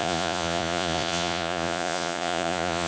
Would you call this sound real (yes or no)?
no